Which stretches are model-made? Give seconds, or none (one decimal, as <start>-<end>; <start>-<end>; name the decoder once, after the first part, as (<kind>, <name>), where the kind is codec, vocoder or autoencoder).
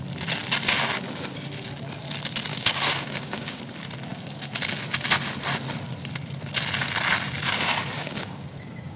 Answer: 2.5-3.6 (codec, DAC); 7.8-9.0